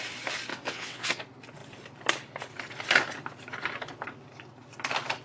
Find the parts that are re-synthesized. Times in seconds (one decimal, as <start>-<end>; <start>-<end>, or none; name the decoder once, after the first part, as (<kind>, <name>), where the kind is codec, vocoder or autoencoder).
0.5-1.2 (vocoder, WaveNeXt)